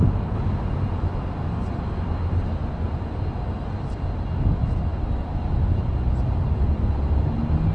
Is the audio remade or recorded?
recorded